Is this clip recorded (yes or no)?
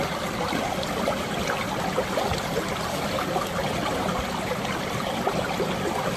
yes